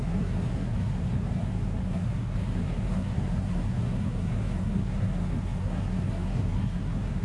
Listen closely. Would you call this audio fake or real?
fake